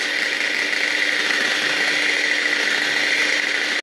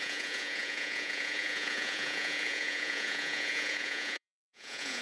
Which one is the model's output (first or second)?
second